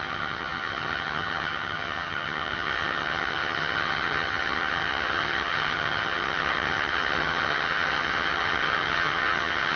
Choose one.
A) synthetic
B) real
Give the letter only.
A